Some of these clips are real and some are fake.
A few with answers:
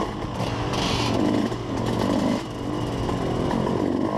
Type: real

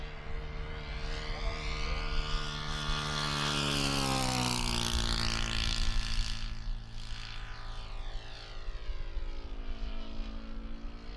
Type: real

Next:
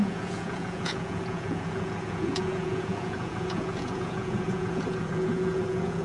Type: fake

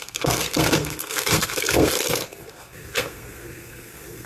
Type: fake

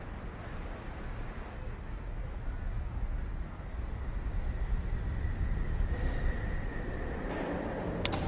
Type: real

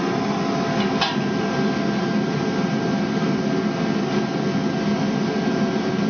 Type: real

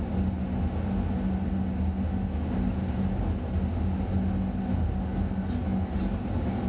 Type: real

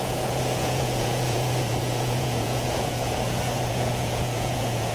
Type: fake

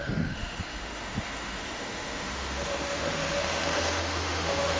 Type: fake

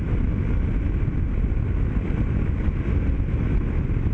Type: real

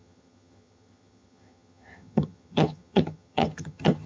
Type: fake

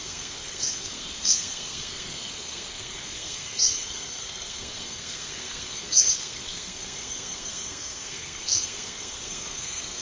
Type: fake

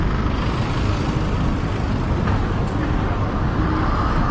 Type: real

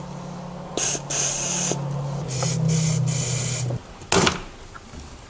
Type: real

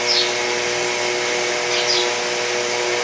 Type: real